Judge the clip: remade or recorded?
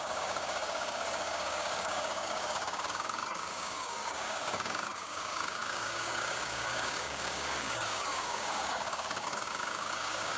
remade